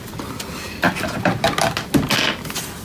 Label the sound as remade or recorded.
recorded